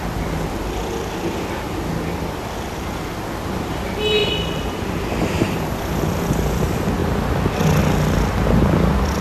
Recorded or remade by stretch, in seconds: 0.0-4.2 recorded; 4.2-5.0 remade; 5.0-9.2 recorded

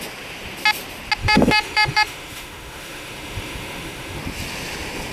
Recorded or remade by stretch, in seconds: 0.0-1.2 recorded; 1.2-4.2 remade; 4.2-5.1 recorded

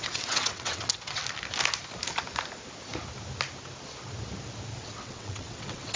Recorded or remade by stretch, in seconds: 0.0-1.2 remade; 1.2-4.8 recorded; 4.8-6.0 remade

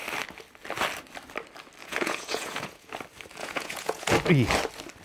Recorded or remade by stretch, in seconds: 0.0-1.8 recorded; 1.8-2.9 remade; 2.9-3.4 recorded; 3.4-4.1 remade; 4.1-5.0 recorded

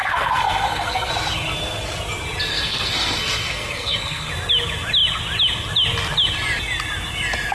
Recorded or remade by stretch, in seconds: 0.0-1.1 remade; 1.1-2.5 recorded; 2.5-4.3 remade; 4.3-7.5 recorded

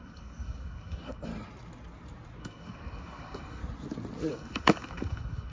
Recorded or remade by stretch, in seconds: 0.0-1.3 remade; 1.3-2.4 recorded; 2.4-3.6 remade; 3.6-4.3 recorded; 4.3-5.5 remade

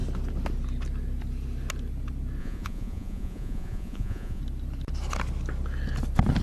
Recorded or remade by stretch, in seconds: 0.0-2.4 recorded; 2.4-4.4 remade; 4.4-6.4 recorded